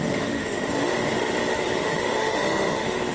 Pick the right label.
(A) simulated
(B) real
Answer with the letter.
A